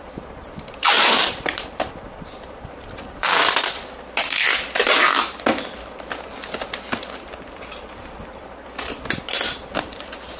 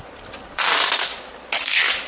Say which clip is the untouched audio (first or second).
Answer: second